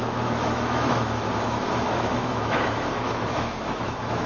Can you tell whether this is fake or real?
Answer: fake